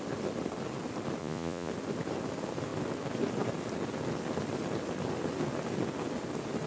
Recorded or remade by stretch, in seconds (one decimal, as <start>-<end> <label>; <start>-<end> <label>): 0.0-1.2 recorded; 1.2-1.7 remade; 1.7-6.7 recorded